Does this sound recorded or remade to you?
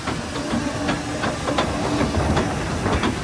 recorded